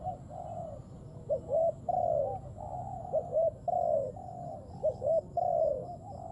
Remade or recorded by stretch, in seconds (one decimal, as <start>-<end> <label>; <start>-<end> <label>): 0.0-6.3 recorded